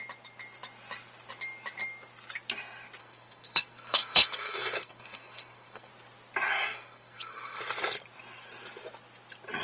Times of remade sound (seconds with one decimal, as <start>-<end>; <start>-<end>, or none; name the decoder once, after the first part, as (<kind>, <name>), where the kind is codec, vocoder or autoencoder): 3.0-5.9 (codec, SNAC); 6.6-7.6